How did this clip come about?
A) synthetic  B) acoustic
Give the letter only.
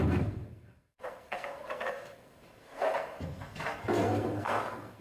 A